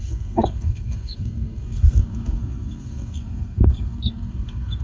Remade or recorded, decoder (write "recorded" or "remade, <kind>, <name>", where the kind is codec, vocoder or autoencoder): remade, codec, SNAC